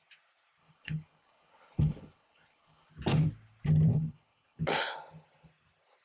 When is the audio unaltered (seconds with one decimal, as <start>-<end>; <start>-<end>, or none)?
0.0-0.6; 2.9-3.9; 4.6-6.0